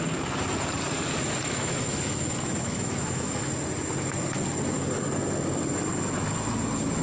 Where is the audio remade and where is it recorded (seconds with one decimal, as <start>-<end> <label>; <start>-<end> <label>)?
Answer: 0.0-1.4 recorded; 1.4-3.5 remade; 3.5-7.0 recorded